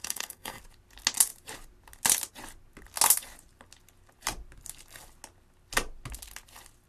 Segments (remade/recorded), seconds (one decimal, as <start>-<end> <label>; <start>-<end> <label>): 0.0-0.6 remade; 0.6-6.9 recorded